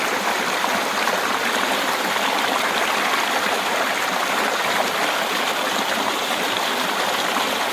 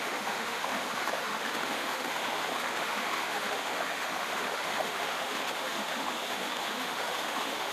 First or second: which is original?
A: first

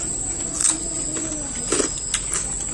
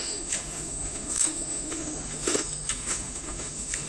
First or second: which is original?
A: first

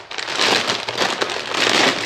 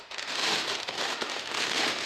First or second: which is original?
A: first